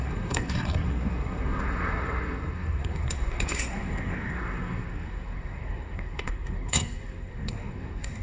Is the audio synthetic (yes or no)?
yes